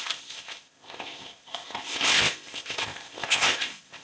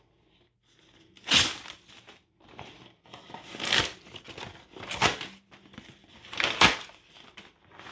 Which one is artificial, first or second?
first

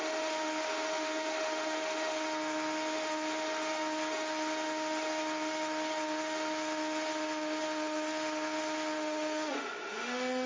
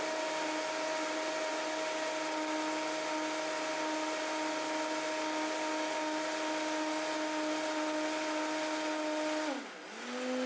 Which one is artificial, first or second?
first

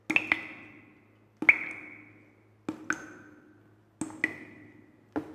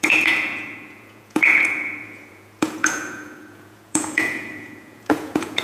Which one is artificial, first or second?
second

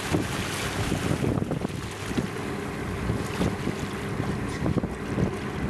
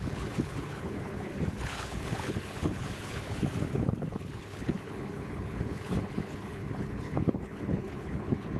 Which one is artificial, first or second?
second